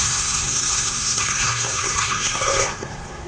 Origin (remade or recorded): remade